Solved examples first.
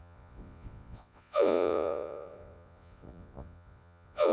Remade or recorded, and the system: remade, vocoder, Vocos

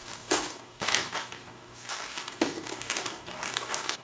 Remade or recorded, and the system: remade, codec, DAC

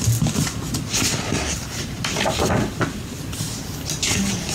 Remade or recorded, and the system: recorded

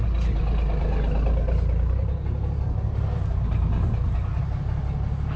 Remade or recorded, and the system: recorded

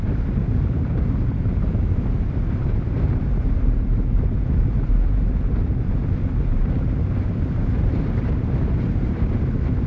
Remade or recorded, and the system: remade, vocoder, BigVGAN v2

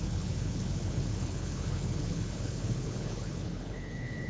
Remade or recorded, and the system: remade, codec, HILCodec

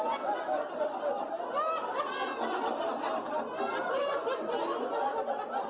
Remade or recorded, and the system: recorded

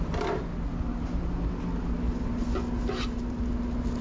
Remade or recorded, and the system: recorded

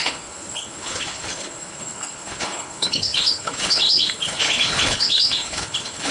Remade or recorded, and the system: remade, codec, HILCodec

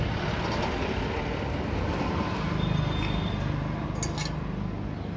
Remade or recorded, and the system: recorded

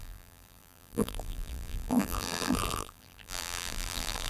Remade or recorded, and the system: remade, vocoder, BigVGAN v2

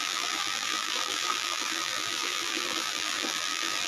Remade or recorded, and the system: remade, vocoder, BigVGAN v2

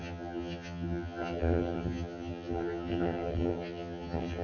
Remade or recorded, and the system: remade, vocoder, HiFi-GAN